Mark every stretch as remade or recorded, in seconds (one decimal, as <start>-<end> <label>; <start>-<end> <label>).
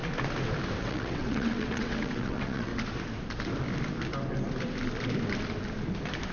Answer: 0.0-0.8 recorded; 0.8-2.7 remade; 2.7-6.3 recorded